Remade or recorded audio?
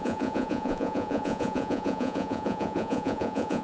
remade